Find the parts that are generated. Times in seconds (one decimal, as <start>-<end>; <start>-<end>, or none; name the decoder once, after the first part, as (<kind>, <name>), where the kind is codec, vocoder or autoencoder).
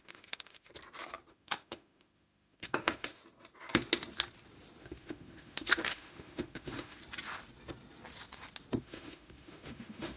0.0-0.7 (autoencoder, DAC-VAE); 1.3-3.2; 4.8-7.0; 8.8-10.2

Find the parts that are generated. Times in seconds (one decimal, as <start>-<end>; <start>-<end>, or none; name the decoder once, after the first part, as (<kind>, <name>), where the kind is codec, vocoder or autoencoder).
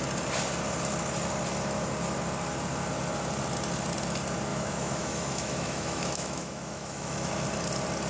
4.5-7.3 (autoencoder, DAC-VAE)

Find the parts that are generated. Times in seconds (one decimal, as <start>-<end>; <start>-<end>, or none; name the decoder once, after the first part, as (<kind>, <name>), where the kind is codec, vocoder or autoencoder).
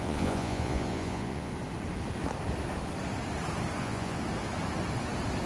0.0-1.5 (vocoder, Vocos); 3.8-4.2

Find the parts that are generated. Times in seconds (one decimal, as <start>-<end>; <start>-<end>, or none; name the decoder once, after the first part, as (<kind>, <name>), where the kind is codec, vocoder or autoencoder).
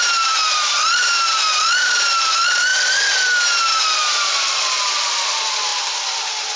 5.7-6.6 (vocoder, BigVGAN v2)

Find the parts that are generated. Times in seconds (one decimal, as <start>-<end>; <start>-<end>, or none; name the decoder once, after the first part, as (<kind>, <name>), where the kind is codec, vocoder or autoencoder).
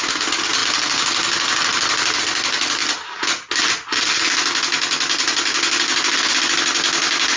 none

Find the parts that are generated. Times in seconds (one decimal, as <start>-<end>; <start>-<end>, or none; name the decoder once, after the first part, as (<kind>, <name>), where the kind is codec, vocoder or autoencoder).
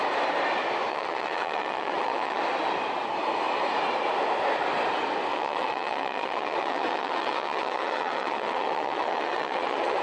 0.9-2.4 (vocoder, WaveNeXt); 5.3-10.0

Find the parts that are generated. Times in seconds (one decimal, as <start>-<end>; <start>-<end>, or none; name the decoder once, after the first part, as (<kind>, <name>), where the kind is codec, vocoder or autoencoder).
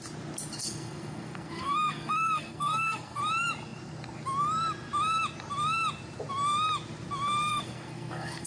0.6-3.2 (codec, SNAC); 7.5-8.5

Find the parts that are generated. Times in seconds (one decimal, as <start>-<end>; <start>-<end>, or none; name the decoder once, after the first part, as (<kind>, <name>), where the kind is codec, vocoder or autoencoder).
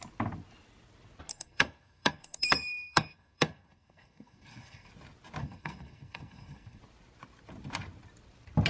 1.3-4.9 (codec, SNAC); 5.4-6.8